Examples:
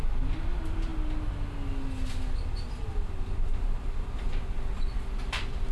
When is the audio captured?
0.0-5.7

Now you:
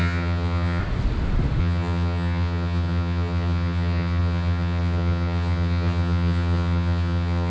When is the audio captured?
0.8-1.6

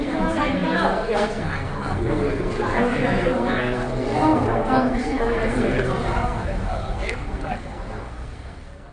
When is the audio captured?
none

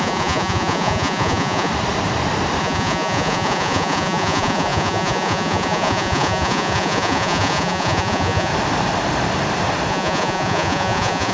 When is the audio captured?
1.7-2.6; 8.5-9.9

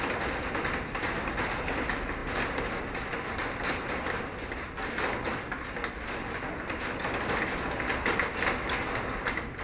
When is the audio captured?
0.0-9.6

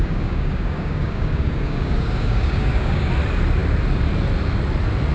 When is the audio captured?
3.1-5.1

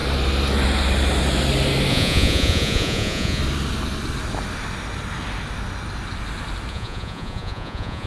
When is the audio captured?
0.0-1.9; 3.4-6.7

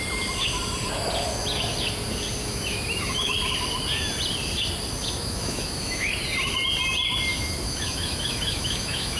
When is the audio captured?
0.0-2.4; 3.3-5.0; 6.1-7.3